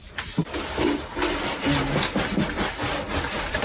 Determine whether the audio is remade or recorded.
remade